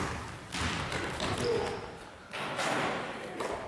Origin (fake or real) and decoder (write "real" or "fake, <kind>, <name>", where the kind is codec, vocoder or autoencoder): real